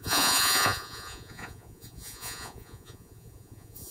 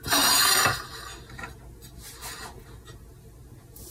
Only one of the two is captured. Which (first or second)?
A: second